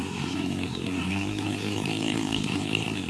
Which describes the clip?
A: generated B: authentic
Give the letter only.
A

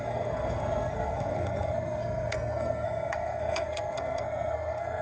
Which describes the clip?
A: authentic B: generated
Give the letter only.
B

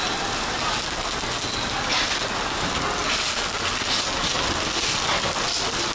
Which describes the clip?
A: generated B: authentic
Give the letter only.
B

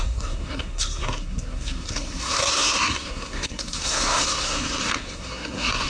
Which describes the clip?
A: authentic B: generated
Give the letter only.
B